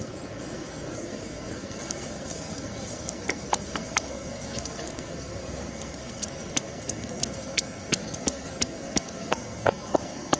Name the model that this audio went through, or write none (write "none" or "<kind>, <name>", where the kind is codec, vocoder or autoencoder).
codec, SNAC